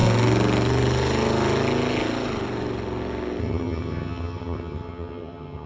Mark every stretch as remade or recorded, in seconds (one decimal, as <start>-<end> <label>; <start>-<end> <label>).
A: 0.0-3.4 recorded; 3.4-5.7 remade